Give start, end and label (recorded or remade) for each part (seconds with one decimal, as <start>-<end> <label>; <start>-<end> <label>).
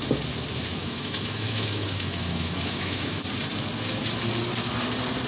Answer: 0.0-0.8 recorded; 0.8-3.2 remade; 3.2-5.3 recorded